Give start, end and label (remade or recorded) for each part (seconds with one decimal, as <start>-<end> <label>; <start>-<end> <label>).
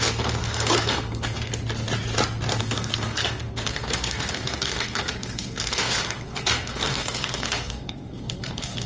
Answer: 0.0-1.5 remade; 1.5-2.6 recorded; 2.6-8.9 remade